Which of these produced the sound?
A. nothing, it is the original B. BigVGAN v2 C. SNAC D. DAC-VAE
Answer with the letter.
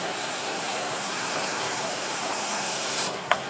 C